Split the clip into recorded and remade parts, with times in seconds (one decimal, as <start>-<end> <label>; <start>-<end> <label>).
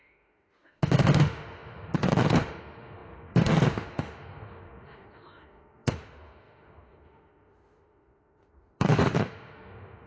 0.0-10.1 remade